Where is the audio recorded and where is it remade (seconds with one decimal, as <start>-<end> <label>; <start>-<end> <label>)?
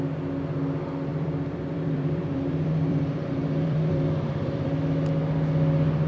0.0-1.1 recorded; 1.1-4.8 remade; 4.8-6.1 recorded